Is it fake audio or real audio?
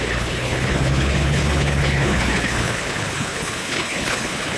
fake